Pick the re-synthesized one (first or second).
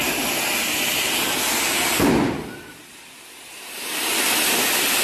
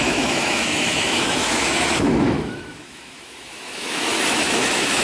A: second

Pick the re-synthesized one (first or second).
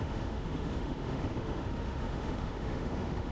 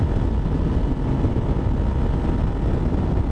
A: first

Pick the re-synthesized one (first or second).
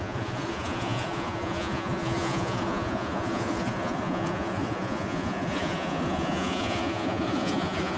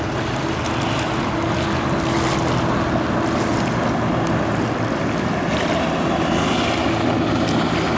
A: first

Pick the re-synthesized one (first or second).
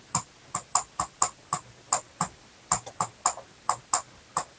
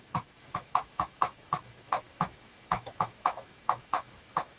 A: second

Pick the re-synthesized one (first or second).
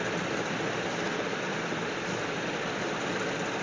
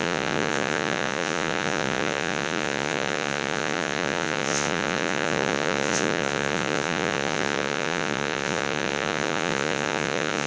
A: second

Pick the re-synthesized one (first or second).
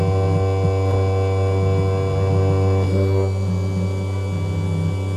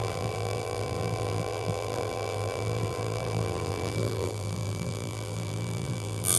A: second